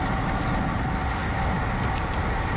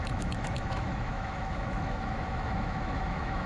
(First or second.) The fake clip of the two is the second